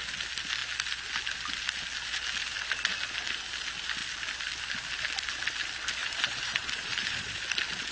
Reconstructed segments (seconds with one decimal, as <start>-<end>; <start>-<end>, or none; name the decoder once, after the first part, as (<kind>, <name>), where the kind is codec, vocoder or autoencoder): 6.0-7.4 (vocoder, BigVGAN v2)